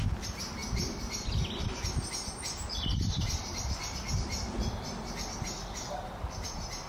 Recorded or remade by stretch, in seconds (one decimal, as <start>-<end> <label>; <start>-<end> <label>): 0.0-6.9 recorded